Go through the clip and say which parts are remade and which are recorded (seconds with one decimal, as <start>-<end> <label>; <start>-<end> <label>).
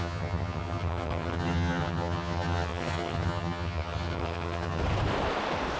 0.0-4.8 remade; 4.8-5.8 recorded